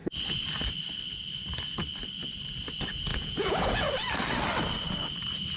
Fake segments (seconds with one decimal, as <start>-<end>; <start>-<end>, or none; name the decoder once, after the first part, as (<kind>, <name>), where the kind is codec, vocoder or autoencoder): 3.1-3.9 (vocoder, Vocos)

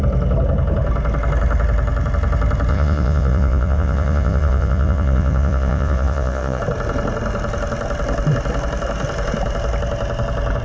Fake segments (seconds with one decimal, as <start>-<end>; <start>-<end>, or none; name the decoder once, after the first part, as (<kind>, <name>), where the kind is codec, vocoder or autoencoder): 2.7-6.6 (vocoder, Vocos)